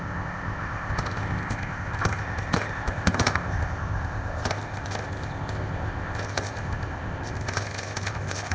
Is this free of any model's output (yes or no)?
no